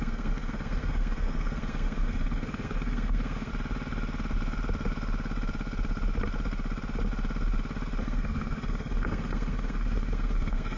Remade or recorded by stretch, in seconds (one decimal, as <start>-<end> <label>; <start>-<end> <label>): 0.0-3.5 remade; 3.5-8.0 recorded; 8.0-10.8 remade